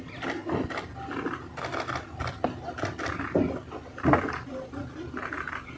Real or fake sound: real